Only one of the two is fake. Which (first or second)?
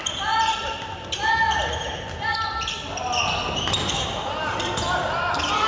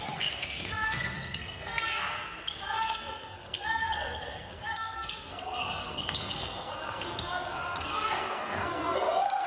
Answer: second